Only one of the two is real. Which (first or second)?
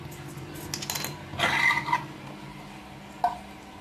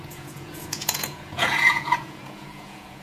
first